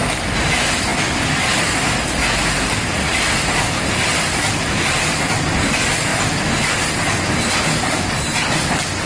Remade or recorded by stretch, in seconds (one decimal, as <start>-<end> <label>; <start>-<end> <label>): 0.0-9.1 recorded